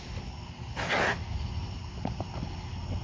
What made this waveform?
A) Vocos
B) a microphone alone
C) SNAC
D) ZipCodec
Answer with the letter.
B